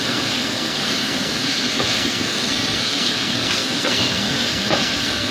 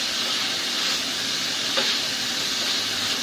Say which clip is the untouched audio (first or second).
second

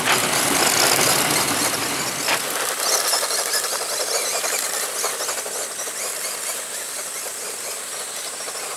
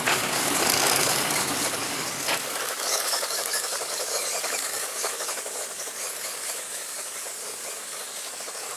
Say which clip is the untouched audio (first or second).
first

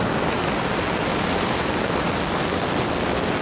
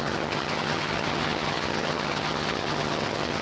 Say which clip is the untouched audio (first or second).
first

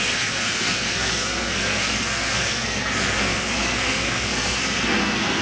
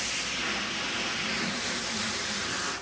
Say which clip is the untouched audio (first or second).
second